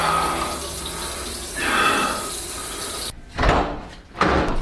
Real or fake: real